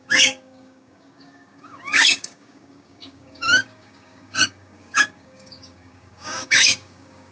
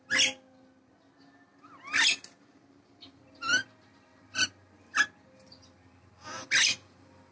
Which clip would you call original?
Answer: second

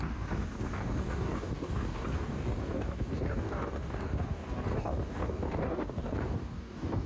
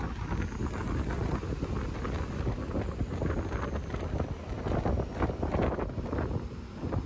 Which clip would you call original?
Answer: second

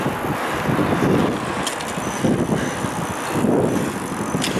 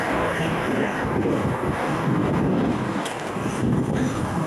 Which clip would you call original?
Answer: first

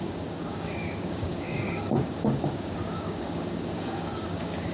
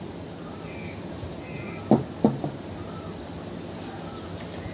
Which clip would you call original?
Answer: second